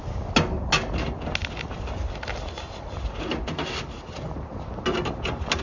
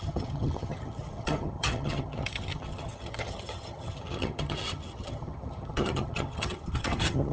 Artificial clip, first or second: second